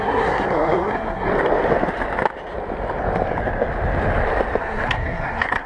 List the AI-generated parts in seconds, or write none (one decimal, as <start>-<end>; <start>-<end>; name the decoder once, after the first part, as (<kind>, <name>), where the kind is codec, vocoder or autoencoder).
0.0-1.3 (codec, SNAC); 4.6-5.7